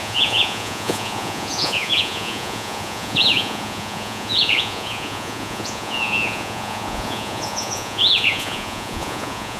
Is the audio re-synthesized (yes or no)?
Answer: yes